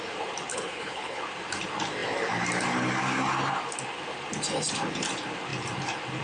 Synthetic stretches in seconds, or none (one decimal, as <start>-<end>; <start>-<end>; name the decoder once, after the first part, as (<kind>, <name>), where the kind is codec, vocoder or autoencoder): 0.5-1.2 (codec, HILCodec)